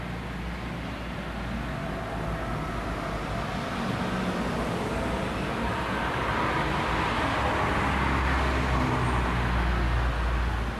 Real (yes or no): yes